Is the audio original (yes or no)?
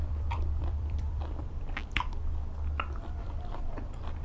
no